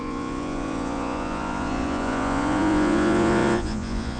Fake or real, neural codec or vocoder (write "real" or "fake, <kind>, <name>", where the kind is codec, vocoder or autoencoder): fake, vocoder, Vocos